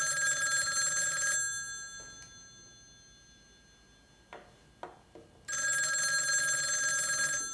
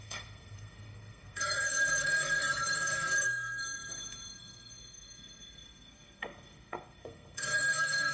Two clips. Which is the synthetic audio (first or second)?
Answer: second